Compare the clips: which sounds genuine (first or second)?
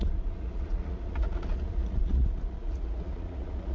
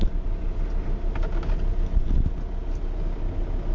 second